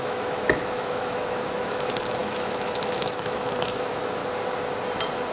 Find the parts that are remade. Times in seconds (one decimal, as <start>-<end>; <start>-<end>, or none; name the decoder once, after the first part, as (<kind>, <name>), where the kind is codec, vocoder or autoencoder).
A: 0.0-4.2 (autoencoder, DAC-VAE)